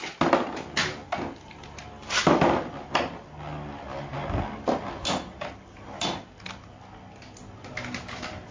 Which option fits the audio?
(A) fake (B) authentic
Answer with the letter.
B